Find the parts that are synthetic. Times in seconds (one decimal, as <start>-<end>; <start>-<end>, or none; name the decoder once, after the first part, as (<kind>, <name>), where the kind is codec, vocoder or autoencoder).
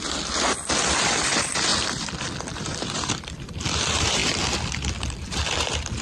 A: 0.0-4.2 (vocoder, BigVGAN v2); 4.9-6.0